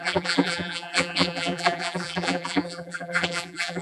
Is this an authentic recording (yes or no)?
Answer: no